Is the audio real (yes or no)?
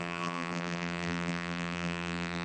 no